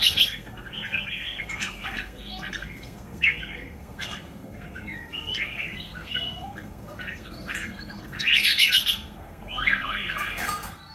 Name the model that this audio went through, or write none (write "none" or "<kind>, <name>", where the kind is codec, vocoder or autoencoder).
codec, SNAC